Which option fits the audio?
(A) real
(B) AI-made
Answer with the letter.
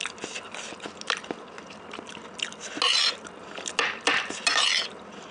A